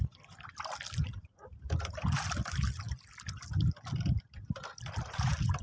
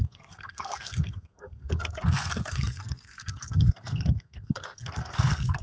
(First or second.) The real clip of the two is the first